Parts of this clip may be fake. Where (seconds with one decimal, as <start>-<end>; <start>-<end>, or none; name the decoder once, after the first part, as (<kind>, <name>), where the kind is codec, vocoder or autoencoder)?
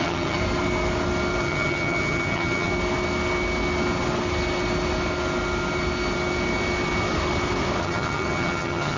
0.0-0.4 (vocoder, HiFi-GAN); 1.4-2.7; 7.8-9.0